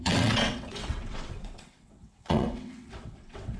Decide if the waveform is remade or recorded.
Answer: remade